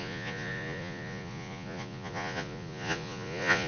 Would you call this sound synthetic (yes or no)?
yes